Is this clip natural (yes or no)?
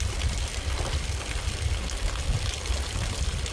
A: yes